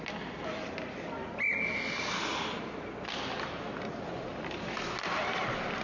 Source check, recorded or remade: recorded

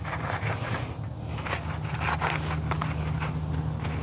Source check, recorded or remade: recorded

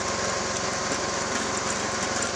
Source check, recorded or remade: recorded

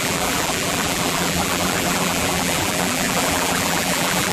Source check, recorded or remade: remade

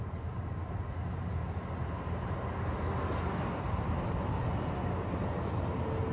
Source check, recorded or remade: recorded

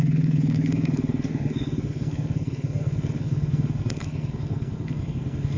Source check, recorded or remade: remade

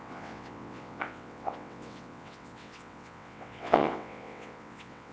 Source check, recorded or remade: remade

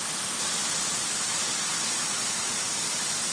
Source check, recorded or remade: recorded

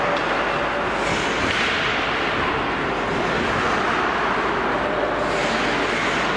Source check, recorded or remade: recorded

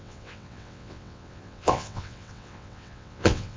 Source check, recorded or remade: remade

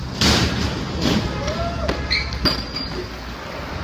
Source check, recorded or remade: recorded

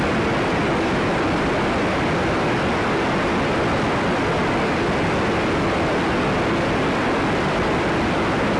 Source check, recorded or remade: recorded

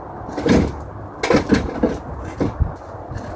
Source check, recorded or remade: recorded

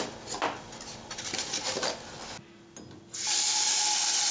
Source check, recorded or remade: recorded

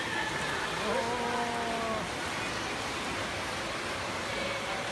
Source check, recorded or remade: recorded